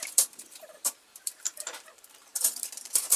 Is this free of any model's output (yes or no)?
no